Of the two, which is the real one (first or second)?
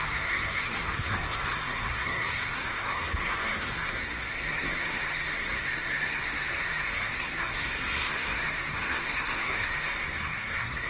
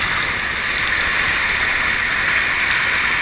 second